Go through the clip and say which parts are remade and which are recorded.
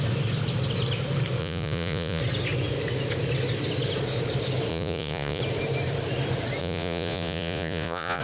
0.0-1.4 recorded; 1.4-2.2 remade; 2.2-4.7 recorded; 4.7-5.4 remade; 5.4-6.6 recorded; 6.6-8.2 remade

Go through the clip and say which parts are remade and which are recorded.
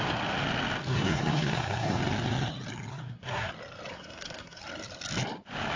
0.0-0.9 recorded; 0.9-2.0 remade; 2.0-2.9 recorded; 2.9-3.5 remade; 3.5-3.9 recorded; 3.9-4.6 remade; 4.6-5.8 recorded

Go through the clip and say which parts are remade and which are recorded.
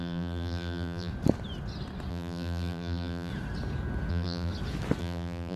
0.0-1.1 remade; 1.1-2.1 recorded; 2.1-3.3 remade; 3.3-4.1 recorded; 4.1-4.5 remade; 4.5-5.0 recorded; 5.0-5.6 remade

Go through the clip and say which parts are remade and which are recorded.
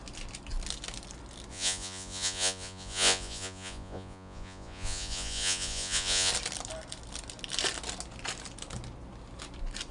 0.0-1.5 recorded; 1.5-6.3 remade; 6.3-9.9 recorded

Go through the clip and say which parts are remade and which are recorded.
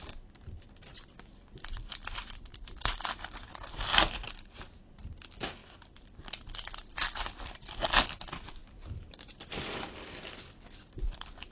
0.0-1.9 recorded; 1.9-2.9 remade; 2.9-3.9 recorded; 3.9-4.9 remade; 4.9-5.6 recorded; 5.6-6.2 remade; 6.2-8.6 recorded; 8.6-11.5 remade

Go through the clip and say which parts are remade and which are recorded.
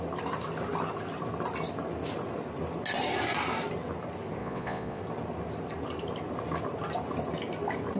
0.0-4.4 recorded; 4.4-5.0 remade; 5.0-8.0 recorded